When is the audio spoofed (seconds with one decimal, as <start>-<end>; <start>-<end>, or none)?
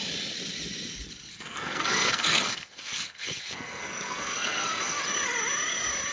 1.3-5.0